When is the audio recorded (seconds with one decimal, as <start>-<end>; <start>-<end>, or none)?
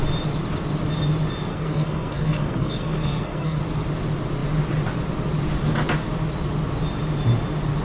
0.0-1.5; 3.6-7.8